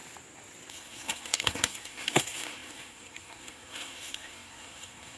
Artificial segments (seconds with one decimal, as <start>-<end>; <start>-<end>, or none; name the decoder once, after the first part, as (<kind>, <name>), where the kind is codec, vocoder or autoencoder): 0.7-5.2 (codec, SNAC)